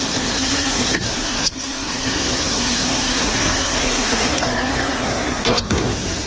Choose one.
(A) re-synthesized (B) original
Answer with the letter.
A